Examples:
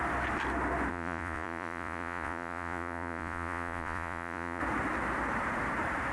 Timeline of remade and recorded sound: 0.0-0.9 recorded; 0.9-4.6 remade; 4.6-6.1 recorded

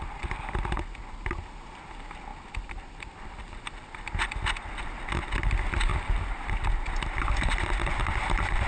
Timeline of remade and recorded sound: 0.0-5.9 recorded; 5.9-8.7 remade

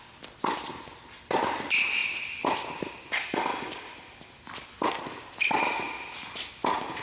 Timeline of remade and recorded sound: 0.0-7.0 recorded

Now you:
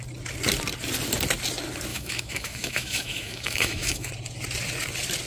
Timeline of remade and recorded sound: 0.0-1.9 recorded; 1.9-4.1 remade; 4.1-5.3 recorded

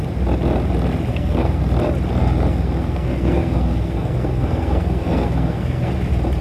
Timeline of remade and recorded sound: 0.0-1.1 recorded; 1.1-1.6 remade; 1.6-2.2 recorded; 2.2-5.9 remade; 5.9-6.4 recorded

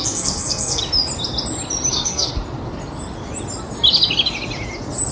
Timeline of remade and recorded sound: 0.0-0.8 remade; 0.8-1.9 recorded; 1.9-2.3 remade; 2.3-5.1 recorded

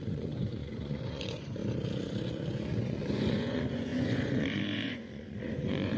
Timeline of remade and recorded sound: 0.0-1.6 remade; 1.6-2.3 recorded; 2.3-6.0 remade

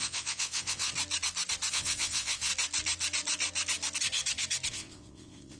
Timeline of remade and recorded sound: 0.0-0.9 remade; 0.9-1.7 recorded; 1.7-2.5 remade; 2.5-4.7 recorded; 4.7-5.6 remade